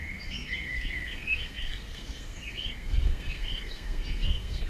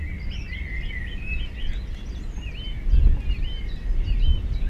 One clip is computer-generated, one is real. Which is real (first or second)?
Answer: second